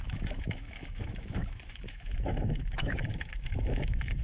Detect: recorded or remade remade